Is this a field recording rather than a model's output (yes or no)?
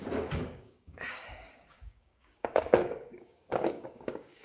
no